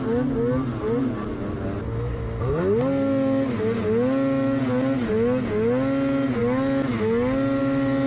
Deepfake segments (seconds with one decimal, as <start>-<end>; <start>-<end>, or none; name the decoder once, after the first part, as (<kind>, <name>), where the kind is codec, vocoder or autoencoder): none

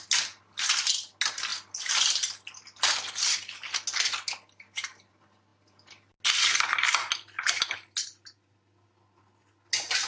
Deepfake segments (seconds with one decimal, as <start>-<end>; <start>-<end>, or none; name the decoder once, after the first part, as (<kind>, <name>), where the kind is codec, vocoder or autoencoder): none

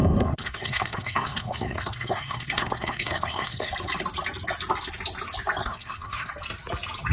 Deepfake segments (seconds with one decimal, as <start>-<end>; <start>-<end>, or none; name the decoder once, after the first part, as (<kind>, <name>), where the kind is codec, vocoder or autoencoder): 0.0-3.7 (codec, SNAC); 5.6-6.3

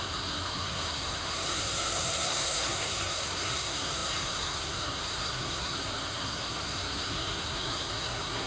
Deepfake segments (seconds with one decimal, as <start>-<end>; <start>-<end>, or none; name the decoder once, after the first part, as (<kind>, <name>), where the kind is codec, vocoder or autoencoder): 0.0-8.5 (codec, SNAC)

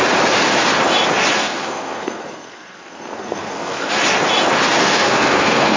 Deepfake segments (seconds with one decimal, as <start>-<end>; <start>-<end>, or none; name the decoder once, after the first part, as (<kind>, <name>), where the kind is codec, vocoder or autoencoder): 1.4-3.9 (codec, SNAC); 4.8-5.8

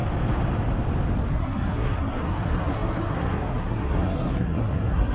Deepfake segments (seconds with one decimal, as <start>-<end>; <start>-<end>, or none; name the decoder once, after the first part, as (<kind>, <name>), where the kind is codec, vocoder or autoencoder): 1.3-5.1 (codec, SNAC)